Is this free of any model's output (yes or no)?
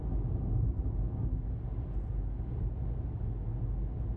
yes